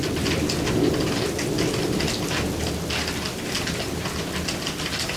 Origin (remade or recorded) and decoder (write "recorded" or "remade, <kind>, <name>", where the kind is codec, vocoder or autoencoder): recorded